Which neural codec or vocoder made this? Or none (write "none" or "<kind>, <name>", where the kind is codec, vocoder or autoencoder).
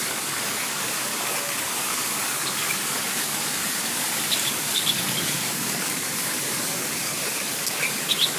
codec, DAC